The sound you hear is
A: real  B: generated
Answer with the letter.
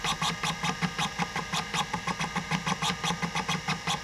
A